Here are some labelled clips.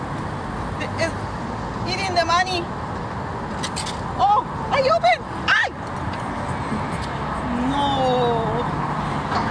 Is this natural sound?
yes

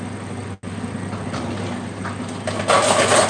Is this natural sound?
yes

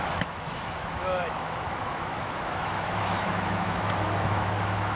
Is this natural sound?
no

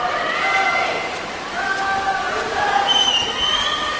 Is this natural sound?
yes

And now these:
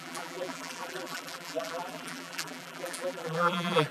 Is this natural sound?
no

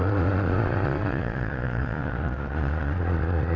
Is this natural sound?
no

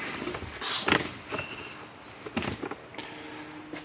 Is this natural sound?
no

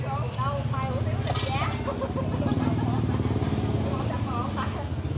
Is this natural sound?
yes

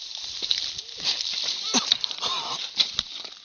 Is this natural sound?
yes